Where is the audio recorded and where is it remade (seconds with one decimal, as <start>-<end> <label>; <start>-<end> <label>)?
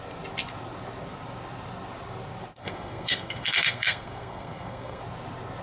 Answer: 0.0-2.6 recorded; 2.6-5.0 remade; 5.0-5.6 recorded